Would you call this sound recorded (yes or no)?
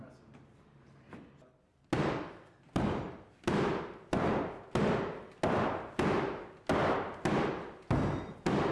yes